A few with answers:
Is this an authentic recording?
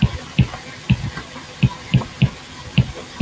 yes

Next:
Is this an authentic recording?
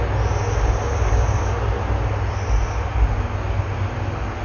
yes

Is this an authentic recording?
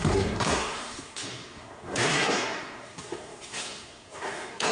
no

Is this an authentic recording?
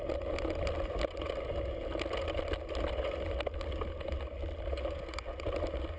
yes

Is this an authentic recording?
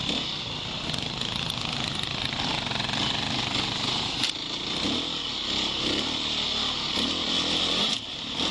yes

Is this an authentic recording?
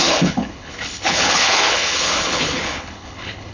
no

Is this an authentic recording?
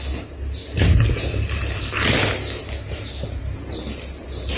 yes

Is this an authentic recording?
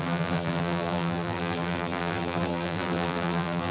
no